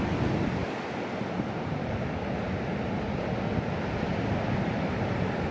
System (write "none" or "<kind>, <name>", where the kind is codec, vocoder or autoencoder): none